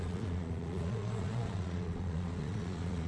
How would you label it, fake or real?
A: fake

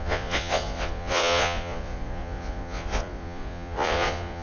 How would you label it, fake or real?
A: fake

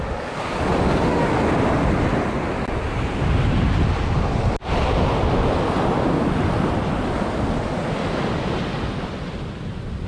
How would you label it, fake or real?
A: real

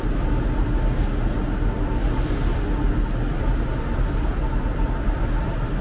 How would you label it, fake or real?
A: real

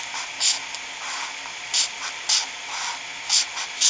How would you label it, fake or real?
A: real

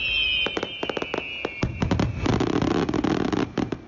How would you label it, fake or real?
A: real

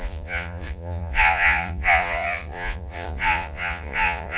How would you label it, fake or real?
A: fake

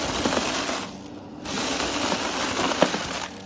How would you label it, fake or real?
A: real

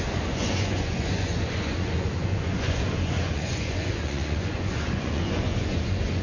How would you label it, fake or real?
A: fake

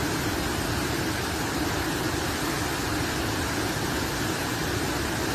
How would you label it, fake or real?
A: real